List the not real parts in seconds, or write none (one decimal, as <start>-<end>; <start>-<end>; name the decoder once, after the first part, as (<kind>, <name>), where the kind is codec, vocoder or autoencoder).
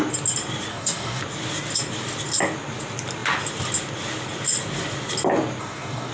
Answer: 0.7-1.2 (codec, DAC); 5.6-6.1